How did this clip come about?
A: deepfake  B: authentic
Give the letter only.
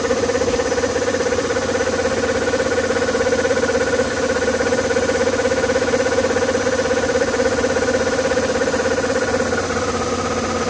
A